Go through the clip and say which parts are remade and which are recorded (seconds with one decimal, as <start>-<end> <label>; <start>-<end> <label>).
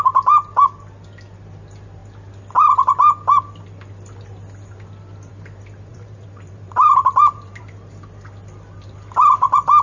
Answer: 0.0-5.9 recorded; 5.9-7.6 remade; 7.6-9.8 recorded